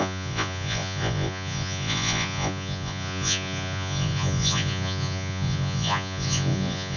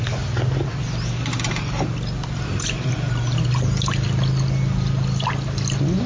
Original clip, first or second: second